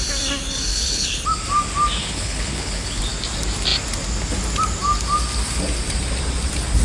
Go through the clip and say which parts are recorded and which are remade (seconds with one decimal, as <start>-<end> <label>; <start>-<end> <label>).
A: 0.0-0.7 recorded; 0.7-1.2 remade; 1.2-2.0 recorded; 2.0-3.0 remade; 3.0-6.8 recorded